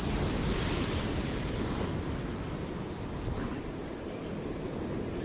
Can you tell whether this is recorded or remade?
recorded